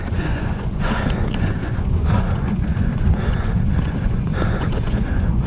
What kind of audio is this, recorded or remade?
remade